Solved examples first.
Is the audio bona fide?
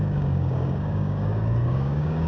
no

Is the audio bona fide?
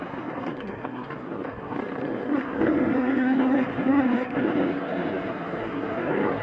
no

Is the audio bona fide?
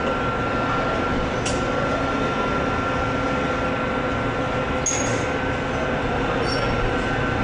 yes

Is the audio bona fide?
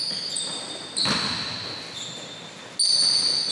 yes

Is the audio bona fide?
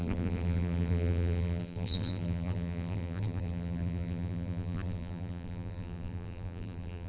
no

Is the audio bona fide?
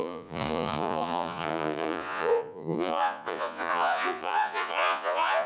no